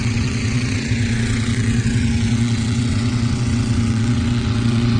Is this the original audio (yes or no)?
no